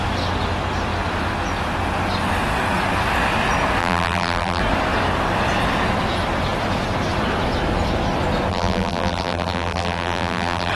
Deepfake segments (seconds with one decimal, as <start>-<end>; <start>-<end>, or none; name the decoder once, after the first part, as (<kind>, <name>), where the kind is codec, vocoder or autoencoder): 3.8-4.6 (vocoder, BigVGAN v2); 8.5-10.7

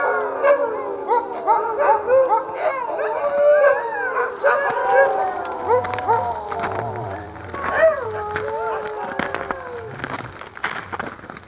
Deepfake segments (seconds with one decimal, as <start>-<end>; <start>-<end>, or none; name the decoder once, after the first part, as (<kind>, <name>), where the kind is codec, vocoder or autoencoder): none

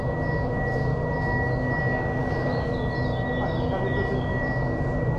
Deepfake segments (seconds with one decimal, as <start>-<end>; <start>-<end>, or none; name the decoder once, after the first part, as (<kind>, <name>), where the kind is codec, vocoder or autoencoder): none

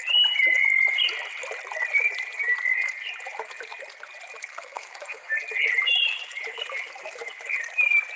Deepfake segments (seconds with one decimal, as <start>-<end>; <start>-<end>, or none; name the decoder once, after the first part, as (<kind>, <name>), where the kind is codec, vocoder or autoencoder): 4.5-5.3 (codec, SNAC)